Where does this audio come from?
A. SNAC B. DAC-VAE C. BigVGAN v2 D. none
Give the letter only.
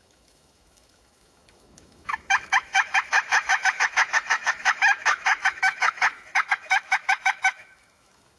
B